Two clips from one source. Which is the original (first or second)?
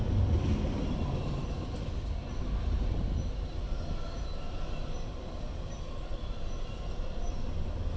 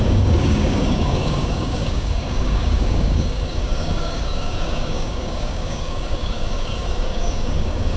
first